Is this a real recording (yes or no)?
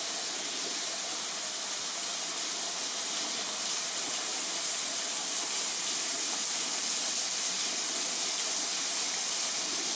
yes